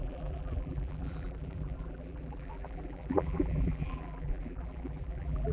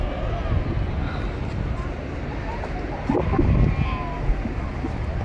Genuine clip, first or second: second